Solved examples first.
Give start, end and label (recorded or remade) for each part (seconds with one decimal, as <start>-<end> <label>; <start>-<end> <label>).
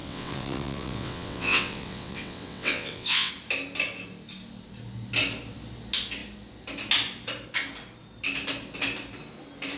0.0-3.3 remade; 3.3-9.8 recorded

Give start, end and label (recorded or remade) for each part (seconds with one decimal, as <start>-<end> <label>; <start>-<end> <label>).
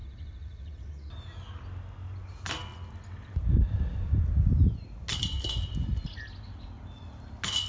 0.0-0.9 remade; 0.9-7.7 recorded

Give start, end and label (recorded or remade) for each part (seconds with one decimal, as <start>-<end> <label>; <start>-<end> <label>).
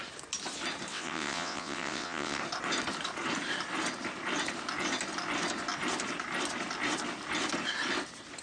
0.0-0.9 recorded; 0.9-2.4 remade; 2.4-8.4 recorded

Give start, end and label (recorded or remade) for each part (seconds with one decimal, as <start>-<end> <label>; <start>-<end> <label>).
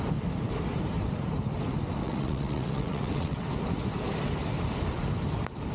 0.0-2.0 recorded; 2.0-3.5 remade; 3.5-5.7 recorded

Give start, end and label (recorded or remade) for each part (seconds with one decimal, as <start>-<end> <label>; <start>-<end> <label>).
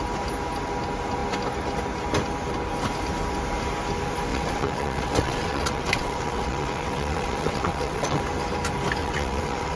0.0-4.3 recorded; 4.3-8.2 remade; 8.2-9.0 recorded; 9.0-9.8 remade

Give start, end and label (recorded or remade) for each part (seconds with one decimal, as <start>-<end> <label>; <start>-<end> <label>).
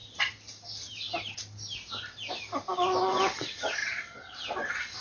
0.0-3.0 recorded; 3.0-5.0 remade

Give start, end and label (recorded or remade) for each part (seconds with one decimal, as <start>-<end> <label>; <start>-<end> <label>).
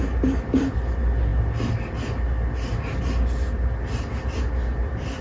0.0-5.2 recorded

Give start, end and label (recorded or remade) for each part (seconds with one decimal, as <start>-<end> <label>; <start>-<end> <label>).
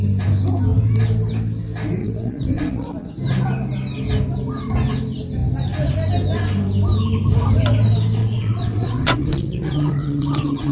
0.0-2.0 recorded; 2.0-3.1 remade; 3.1-8.2 recorded; 8.2-10.7 remade